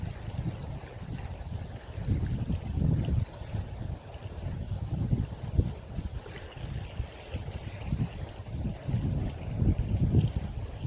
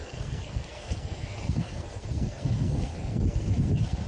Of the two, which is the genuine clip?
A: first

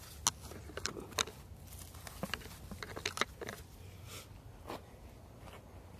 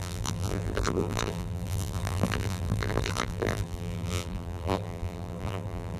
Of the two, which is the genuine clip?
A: first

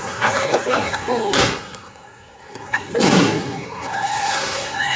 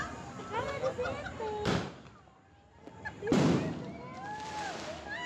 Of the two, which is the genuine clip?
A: second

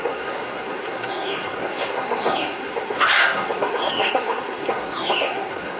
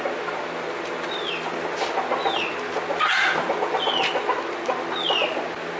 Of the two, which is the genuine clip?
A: second